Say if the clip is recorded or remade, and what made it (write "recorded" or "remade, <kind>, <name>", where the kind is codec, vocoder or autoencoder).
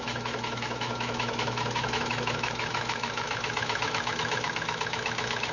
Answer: remade, autoencoder, DAC-VAE